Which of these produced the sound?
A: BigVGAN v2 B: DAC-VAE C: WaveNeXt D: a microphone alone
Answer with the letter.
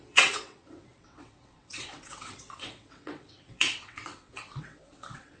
C